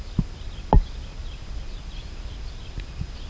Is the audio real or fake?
real